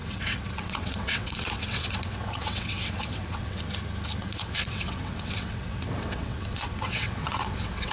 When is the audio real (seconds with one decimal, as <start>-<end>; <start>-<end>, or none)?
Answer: 3.6-4.2